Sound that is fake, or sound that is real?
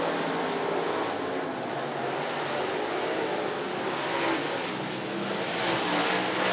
real